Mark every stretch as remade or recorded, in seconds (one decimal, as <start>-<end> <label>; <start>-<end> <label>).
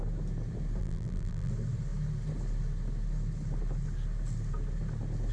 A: 0.0-0.8 recorded; 0.8-1.5 remade; 1.5-5.3 recorded